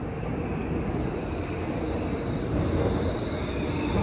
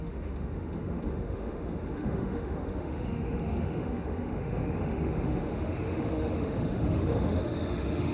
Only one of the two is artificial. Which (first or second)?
second